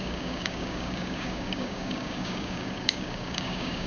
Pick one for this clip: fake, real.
fake